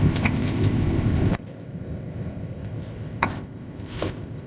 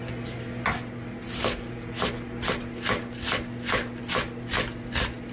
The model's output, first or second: first